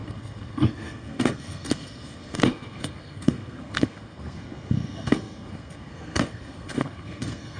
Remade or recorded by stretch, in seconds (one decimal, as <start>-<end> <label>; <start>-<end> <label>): 0.0-7.6 remade